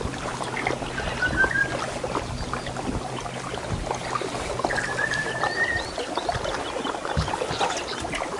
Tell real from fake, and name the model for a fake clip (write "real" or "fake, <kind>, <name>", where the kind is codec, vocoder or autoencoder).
real